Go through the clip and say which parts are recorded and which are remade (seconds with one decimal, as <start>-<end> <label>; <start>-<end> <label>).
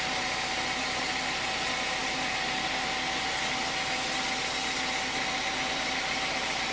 0.0-6.7 recorded